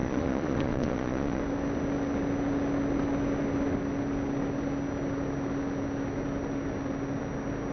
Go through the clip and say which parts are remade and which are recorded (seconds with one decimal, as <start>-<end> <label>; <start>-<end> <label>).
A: 0.0-1.4 remade; 1.4-7.7 recorded

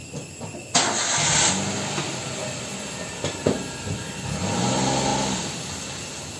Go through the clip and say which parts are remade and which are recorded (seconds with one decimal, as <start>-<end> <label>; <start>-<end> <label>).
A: 0.0-6.4 recorded